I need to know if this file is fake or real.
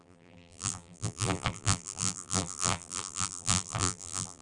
fake